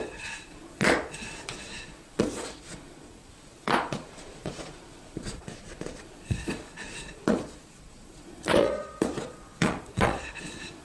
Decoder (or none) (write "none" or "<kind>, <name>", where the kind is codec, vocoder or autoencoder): vocoder, Vocos